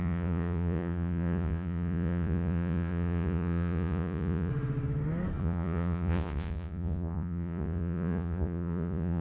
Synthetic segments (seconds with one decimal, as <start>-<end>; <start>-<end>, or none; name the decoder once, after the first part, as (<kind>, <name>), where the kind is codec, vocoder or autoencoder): 0.0-4.5 (vocoder, Vocos); 5.4-9.2